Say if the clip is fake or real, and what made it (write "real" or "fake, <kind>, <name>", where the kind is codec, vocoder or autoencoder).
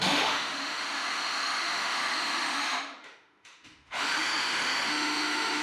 fake, autoencoder, DAC-VAE